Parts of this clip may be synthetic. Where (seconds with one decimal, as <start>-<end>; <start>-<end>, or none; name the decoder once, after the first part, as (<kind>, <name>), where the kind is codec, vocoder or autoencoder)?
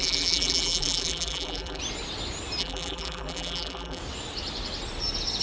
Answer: 0.0-1.8 (vocoder, BigVGAN v2); 2.6-4.0